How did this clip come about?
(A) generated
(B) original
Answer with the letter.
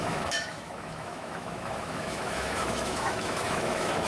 A